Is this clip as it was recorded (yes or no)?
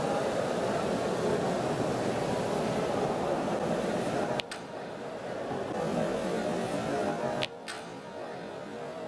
yes